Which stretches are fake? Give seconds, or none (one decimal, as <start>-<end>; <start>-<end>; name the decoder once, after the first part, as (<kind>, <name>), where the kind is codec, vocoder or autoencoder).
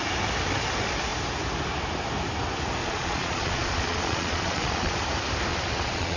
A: 2.8-5.0 (vocoder, Vocos); 5.5-6.2